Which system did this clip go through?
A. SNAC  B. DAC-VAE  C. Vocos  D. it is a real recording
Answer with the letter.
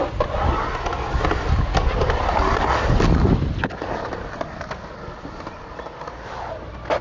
D